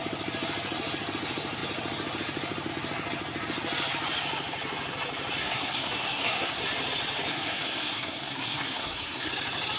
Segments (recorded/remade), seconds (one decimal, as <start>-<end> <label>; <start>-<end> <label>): 0.0-5.4 recorded; 5.4-6.6 remade; 6.6-7.3 recorded; 7.3-9.3 remade; 9.3-9.8 recorded